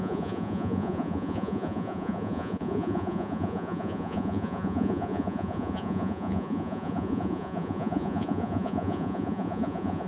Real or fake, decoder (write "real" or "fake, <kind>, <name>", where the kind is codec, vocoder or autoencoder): fake, vocoder, Vocos